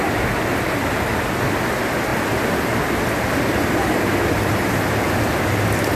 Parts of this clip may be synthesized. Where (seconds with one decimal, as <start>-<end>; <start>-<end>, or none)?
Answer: none